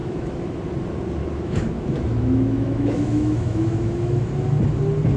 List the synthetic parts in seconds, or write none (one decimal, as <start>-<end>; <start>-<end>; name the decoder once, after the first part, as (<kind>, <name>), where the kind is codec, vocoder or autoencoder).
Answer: 0.0-0.6 (autoencoder, DAC-VAE); 1.2-4.3